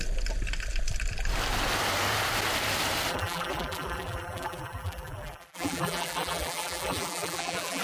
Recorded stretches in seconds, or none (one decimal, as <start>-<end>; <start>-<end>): 0.0-3.1